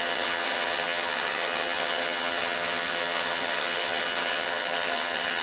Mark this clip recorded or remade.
remade